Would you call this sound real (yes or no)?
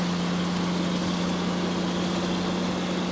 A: yes